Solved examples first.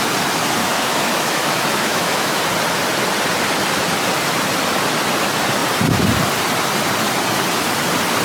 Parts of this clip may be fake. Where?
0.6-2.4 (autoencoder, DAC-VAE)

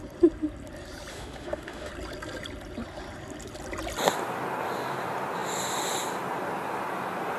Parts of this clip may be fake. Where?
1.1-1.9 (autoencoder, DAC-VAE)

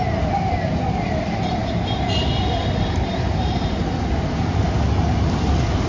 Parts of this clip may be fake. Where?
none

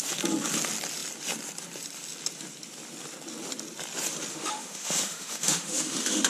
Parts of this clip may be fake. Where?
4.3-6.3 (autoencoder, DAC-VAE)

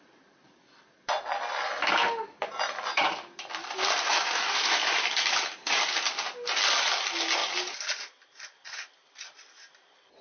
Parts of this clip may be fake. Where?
4.1-4.9 (autoencoder, DAC-VAE)

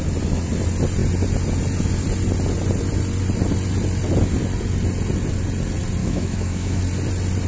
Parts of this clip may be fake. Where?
6.0-6.8 (autoencoder, DAC-VAE)